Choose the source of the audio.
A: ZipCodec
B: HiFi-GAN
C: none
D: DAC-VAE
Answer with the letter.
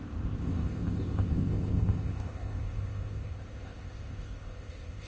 A